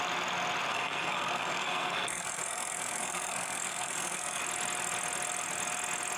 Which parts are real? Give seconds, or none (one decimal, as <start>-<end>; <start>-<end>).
0.0-0.7; 4.4-6.2